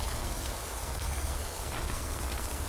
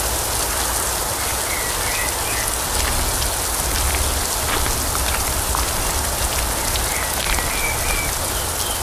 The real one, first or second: second